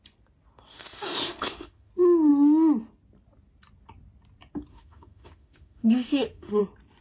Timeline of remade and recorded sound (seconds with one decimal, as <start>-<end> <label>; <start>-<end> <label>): 0.0-0.7 recorded; 0.7-1.9 remade; 1.9-4.7 recorded; 4.7-6.6 remade; 6.6-7.0 recorded